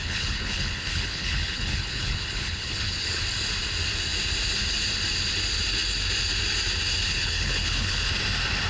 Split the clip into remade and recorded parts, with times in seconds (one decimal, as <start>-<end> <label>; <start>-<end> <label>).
0.0-3.2 remade; 3.2-7.0 recorded; 7.0-8.1 remade; 8.1-8.7 recorded